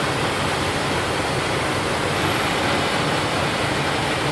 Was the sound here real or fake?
real